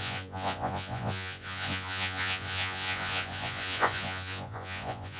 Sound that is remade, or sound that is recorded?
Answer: remade